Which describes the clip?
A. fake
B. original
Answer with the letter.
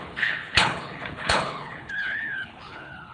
A